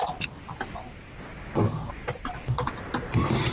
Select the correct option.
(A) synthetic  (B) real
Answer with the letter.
B